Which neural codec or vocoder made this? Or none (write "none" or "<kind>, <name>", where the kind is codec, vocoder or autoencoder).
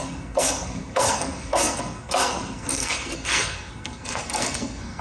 codec, SNAC